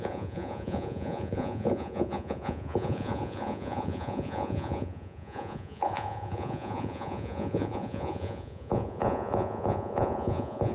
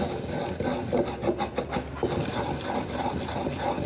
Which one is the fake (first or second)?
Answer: first